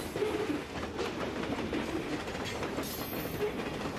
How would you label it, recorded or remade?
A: recorded